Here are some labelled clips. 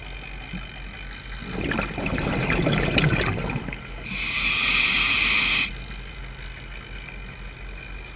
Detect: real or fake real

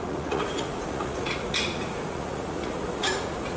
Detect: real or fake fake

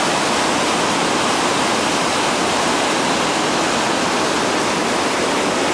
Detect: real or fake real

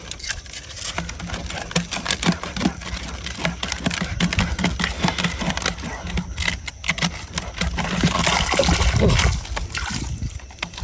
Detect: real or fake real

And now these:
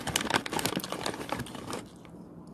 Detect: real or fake real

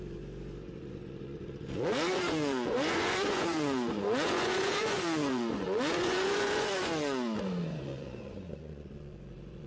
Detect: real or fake fake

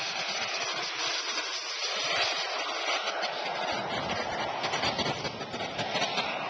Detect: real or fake real